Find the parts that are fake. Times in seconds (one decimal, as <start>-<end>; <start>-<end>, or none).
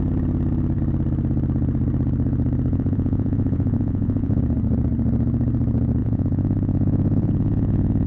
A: 2.7-4.4; 6.0-8.1